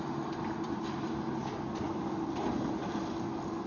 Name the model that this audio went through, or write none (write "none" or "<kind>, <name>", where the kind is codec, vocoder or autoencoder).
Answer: none